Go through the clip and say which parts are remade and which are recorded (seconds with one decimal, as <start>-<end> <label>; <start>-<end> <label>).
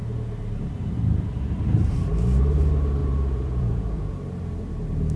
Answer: 0.0-3.0 recorded; 3.0-4.1 remade; 4.1-5.2 recorded